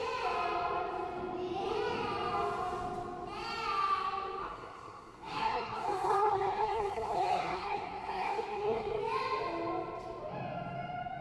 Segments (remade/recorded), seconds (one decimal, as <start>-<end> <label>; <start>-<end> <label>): 0.0-4.4 recorded; 4.4-9.0 remade; 9.0-11.2 recorded